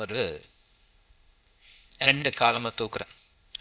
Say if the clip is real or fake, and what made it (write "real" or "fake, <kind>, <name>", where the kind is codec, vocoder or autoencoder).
fake, codec, ZipCodec